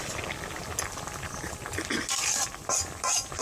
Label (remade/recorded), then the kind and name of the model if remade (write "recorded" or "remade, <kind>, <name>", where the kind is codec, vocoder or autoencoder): recorded